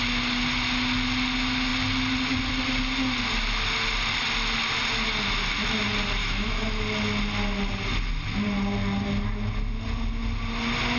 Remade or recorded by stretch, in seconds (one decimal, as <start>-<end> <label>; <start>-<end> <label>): 0.0-6.2 recorded; 6.2-6.8 remade; 6.8-11.0 recorded